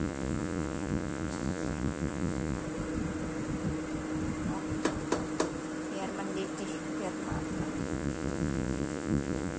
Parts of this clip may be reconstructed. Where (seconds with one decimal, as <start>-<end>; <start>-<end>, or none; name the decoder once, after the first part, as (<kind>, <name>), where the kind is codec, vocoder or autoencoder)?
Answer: 0.0-2.6 (vocoder, Vocos); 7.8-9.6